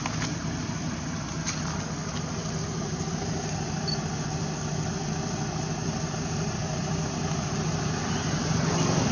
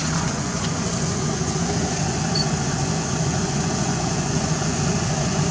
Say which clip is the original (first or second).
first